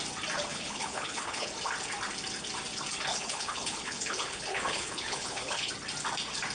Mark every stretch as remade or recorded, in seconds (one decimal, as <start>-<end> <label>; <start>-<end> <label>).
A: 0.0-0.5 recorded; 0.5-1.5 remade; 1.5-3.1 recorded; 3.1-5.7 remade; 5.7-6.5 recorded